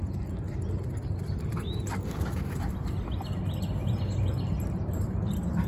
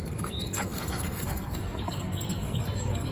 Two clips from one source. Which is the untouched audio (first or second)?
first